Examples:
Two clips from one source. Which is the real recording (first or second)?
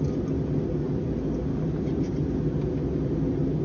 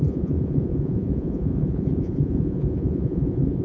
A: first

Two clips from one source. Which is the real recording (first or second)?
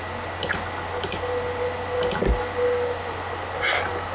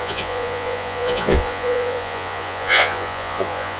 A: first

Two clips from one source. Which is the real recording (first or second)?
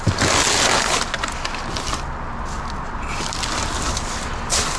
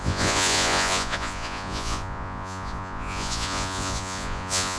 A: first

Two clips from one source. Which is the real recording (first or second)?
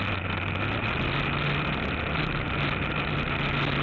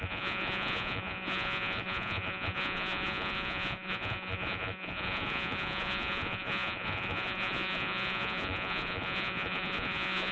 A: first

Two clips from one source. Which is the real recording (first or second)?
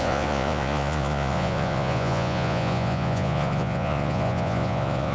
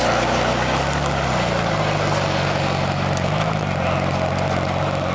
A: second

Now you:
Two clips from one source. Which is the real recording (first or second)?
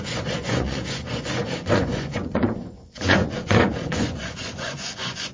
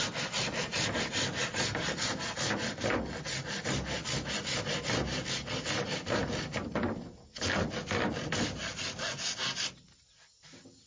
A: second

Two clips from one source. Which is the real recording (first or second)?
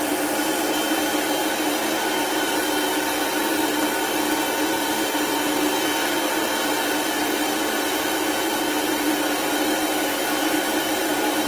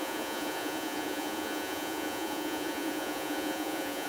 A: first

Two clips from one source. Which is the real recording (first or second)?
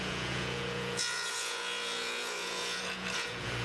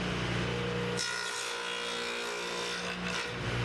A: second